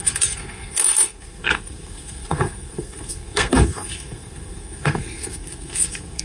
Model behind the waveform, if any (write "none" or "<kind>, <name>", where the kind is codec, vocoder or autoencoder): codec, SNAC